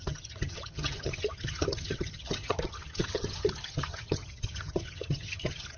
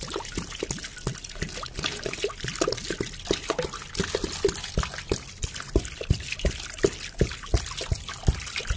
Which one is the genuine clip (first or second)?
second